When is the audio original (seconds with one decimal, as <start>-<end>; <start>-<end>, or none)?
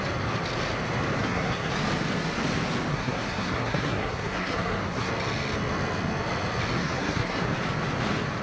0.0-1.2; 1.7-2.9; 5.1-6.8; 7.4-8.4